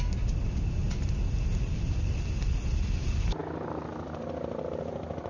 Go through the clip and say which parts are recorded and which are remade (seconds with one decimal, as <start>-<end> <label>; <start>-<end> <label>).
0.0-5.3 recorded